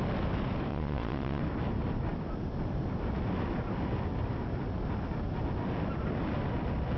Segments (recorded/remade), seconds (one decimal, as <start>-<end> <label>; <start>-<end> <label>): 0.0-0.7 recorded; 0.7-1.4 remade; 1.4-7.0 recorded

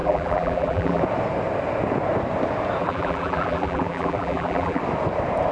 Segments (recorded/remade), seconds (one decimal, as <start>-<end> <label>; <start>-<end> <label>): 0.0-1.0 remade; 1.0-2.8 recorded; 2.8-4.8 remade; 4.8-5.5 recorded

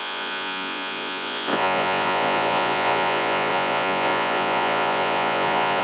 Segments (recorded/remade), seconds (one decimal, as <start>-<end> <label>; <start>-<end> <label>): 0.0-5.8 remade

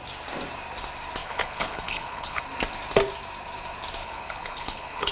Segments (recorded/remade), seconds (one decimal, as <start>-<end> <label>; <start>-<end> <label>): 0.0-1.2 recorded; 1.2-2.4 remade; 2.4-4.0 recorded; 4.0-5.1 remade

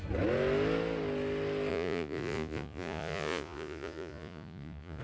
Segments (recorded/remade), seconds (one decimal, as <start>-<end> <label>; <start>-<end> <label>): 0.0-1.7 recorded; 1.7-5.0 remade